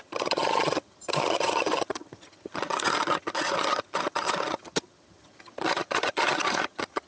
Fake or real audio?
fake